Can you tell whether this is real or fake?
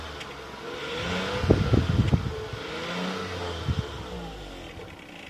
real